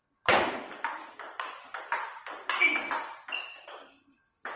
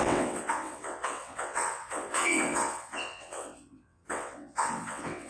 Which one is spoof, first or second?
second